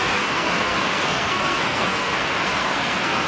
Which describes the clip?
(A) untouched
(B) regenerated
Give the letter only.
B